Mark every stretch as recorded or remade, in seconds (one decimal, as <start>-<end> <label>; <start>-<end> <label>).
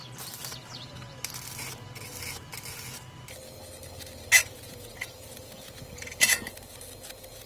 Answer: 0.0-4.4 recorded; 4.4-6.4 remade; 6.4-7.5 recorded